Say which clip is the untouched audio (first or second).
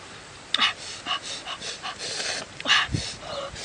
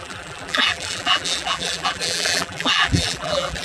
first